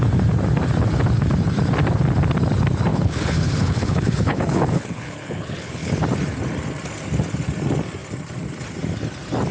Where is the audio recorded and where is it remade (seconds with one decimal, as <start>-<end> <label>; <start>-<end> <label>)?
0.0-2.9 recorded; 2.9-6.0 remade; 6.0-9.5 recorded